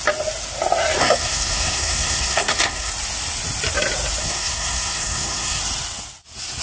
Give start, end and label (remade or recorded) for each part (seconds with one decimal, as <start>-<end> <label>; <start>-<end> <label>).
0.0-1.0 recorded; 1.0-2.9 remade; 2.9-4.2 recorded; 4.2-5.6 remade; 5.6-6.6 recorded